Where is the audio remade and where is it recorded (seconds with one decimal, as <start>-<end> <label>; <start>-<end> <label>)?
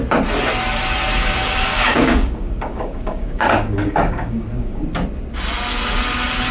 0.0-1.2 recorded; 1.2-4.8 remade; 4.8-6.5 recorded